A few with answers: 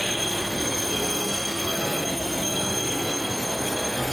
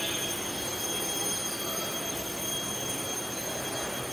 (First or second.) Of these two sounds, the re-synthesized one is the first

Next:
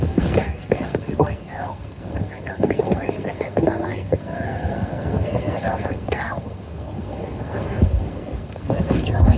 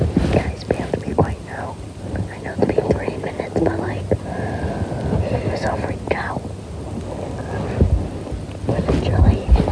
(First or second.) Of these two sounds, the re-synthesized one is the first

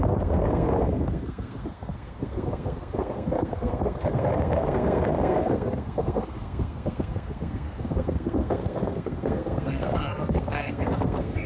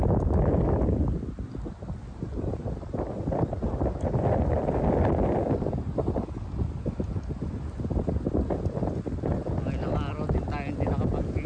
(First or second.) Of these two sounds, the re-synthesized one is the first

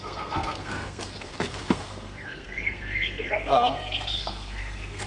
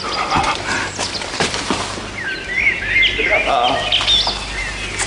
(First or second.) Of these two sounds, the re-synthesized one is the first